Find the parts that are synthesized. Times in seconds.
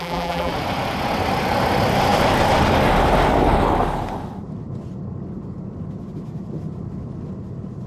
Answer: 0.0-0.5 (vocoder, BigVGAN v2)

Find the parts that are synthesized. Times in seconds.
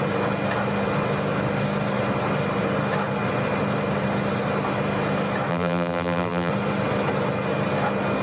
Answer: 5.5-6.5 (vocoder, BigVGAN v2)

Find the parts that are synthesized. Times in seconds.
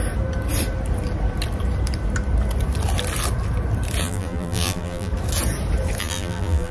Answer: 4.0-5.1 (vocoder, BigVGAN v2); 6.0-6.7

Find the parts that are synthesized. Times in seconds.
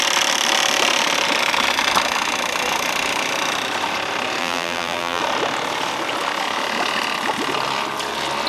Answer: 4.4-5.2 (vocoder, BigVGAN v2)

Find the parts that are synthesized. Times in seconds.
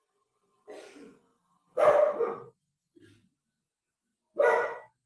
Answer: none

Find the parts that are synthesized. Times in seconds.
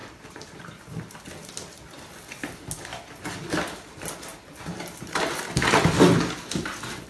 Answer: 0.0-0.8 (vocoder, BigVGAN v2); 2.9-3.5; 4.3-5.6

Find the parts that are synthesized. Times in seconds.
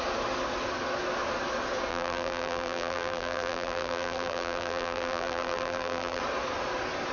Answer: 1.9-6.2 (vocoder, BigVGAN v2)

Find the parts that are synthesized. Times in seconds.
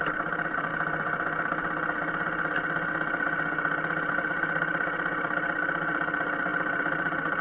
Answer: 0.0-0.7 (vocoder, BigVGAN v2); 4.1-7.4